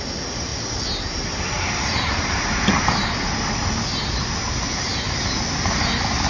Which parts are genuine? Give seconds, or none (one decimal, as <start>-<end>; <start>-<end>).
0.0-6.3